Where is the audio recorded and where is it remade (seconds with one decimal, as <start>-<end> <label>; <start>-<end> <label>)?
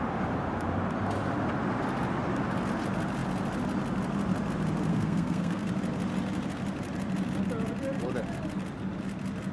0.0-4.9 recorded; 4.9-5.7 remade; 5.7-9.5 recorded